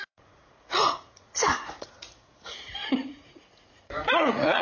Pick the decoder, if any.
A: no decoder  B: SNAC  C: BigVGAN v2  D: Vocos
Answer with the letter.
D